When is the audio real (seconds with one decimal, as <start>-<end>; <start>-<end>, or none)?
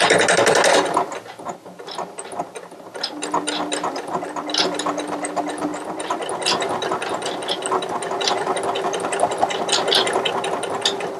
0.0-11.2